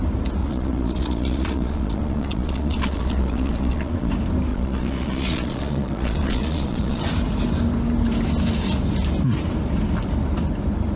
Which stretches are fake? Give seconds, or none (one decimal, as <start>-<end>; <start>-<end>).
0.4-4.1; 4.5-7.0